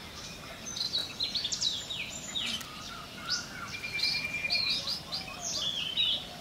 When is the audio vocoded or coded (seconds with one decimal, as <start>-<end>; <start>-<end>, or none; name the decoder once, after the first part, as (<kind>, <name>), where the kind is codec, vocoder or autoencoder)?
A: none